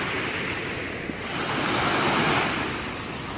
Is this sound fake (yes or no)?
no